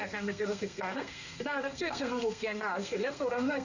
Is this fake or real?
fake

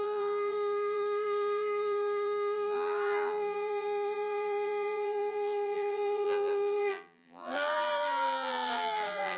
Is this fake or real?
fake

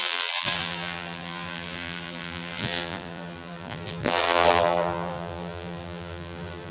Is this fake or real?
fake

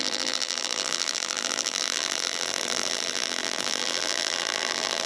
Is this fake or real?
fake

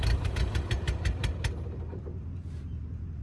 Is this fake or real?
fake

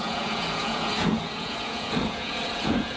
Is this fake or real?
fake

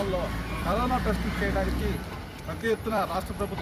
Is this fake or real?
fake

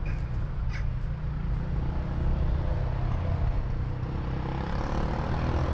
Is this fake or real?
real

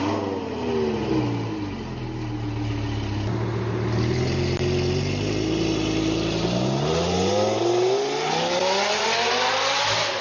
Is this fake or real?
real